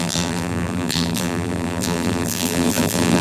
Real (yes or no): no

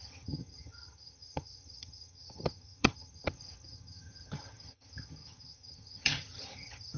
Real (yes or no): no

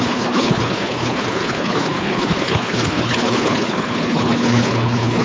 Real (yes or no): no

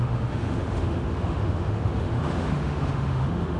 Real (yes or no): no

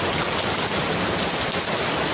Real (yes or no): yes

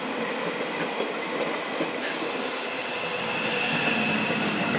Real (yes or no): yes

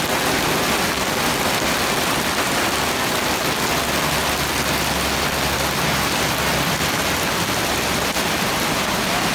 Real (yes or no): yes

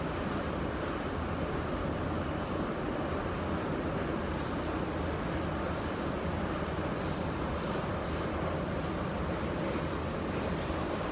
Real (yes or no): yes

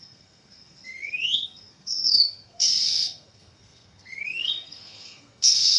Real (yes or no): no